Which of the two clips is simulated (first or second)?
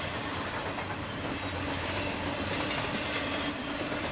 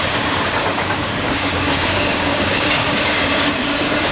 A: second